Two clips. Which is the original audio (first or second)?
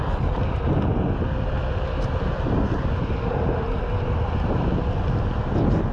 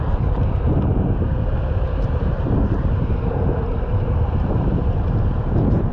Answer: first